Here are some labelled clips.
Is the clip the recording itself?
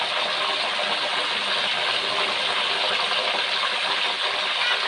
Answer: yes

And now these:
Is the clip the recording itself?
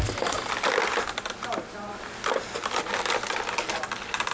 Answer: yes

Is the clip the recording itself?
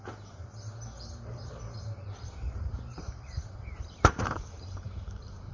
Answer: no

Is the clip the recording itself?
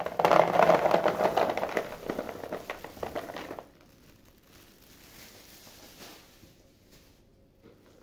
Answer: yes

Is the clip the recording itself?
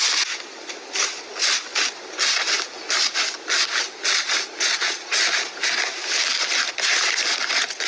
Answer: yes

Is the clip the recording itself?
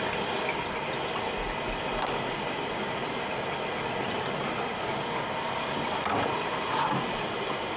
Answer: yes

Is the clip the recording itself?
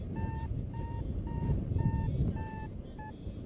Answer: no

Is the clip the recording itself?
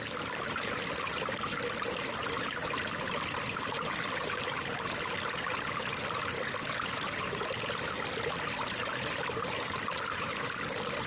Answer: yes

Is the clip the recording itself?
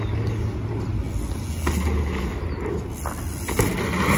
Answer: yes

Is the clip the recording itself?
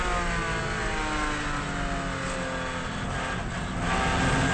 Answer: yes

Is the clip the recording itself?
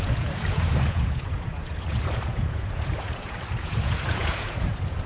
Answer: no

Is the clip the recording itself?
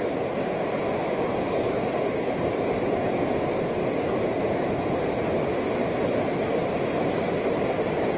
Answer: no